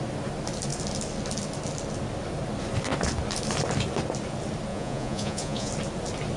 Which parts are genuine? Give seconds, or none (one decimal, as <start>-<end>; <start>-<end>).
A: 0.0-4.7; 5.7-6.4